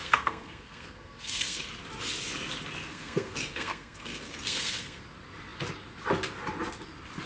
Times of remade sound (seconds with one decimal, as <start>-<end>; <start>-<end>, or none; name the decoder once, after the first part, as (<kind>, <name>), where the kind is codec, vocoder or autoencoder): 0.0-1.7 (codec, SNAC); 2.9-5.0